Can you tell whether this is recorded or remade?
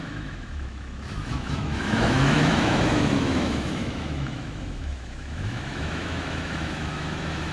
remade